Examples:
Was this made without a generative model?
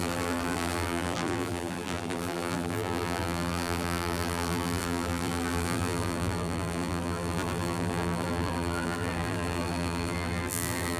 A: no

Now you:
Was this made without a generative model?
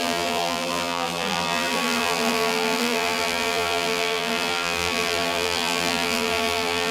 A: no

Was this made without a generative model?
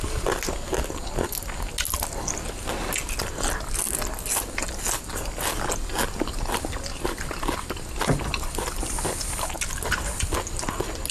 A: yes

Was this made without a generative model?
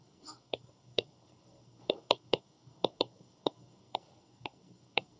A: no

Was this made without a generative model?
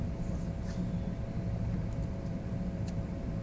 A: yes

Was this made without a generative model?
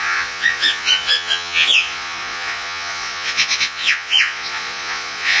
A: no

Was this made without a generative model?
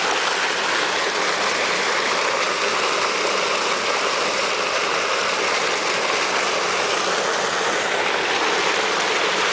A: yes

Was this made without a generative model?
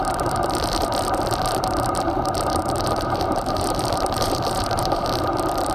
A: no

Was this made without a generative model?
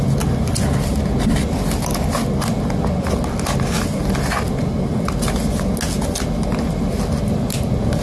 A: yes